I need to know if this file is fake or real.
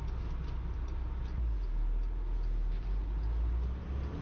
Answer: real